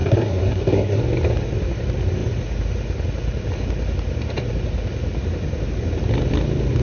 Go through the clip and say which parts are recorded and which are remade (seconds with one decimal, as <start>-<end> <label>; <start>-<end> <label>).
0.0-1.0 remade; 1.0-6.8 recorded